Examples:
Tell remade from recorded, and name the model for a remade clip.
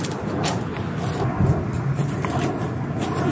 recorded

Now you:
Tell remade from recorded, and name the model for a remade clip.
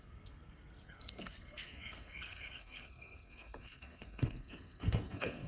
remade, codec, SNAC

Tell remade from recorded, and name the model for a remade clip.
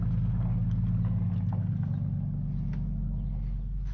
recorded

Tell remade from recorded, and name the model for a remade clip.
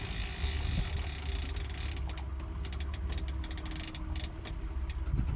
recorded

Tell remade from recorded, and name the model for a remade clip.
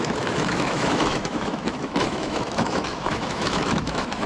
remade, autoencoder, DAC-VAE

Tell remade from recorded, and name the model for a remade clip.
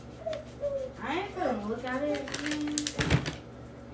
recorded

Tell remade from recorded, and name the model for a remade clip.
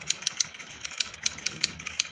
remade, codec, DAC